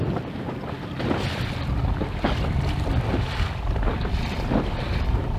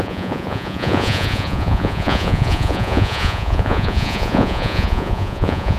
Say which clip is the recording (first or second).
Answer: first